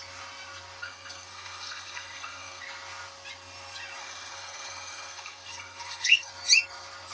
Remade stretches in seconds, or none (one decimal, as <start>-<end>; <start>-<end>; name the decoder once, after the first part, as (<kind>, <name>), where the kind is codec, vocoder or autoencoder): 0.8-2.6 (codec, SNAC); 4.0-6.3